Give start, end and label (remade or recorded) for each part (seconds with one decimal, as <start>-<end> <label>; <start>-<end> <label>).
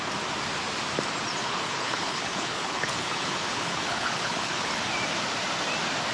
0.0-1.4 recorded; 1.4-4.7 remade; 4.7-6.1 recorded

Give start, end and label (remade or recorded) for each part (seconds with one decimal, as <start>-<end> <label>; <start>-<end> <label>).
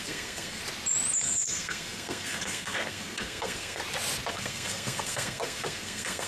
0.0-0.6 remade; 0.6-1.2 recorded; 1.2-3.8 remade; 3.8-4.3 recorded; 4.3-6.3 remade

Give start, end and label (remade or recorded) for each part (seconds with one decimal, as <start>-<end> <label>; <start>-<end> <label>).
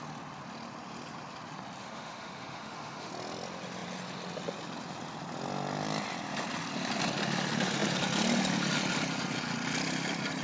0.0-1.8 recorded; 1.8-3.1 remade; 3.1-10.4 recorded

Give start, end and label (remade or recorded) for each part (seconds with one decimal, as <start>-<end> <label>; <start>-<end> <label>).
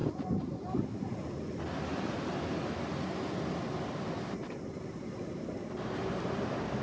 0.0-6.8 recorded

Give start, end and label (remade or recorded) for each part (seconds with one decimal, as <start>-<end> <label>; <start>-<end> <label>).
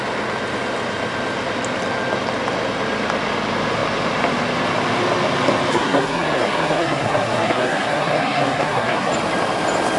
0.0-5.7 recorded; 5.7-9.1 remade; 9.1-10.0 recorded